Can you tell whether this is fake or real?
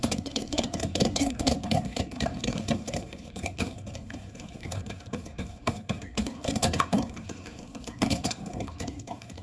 fake